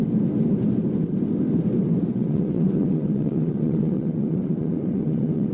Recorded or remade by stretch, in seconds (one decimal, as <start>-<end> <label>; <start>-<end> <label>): 0.0-2.1 recorded; 2.1-5.5 remade